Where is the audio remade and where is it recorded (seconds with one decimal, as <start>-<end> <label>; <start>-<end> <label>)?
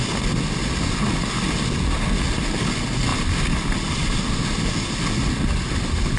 0.0-6.2 recorded